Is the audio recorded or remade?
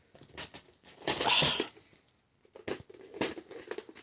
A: recorded